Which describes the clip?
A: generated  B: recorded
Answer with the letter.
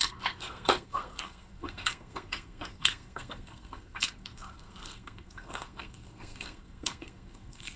A